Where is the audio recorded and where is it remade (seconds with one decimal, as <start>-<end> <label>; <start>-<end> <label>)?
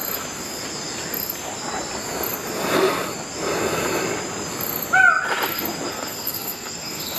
0.0-5.9 recorded; 5.9-7.2 remade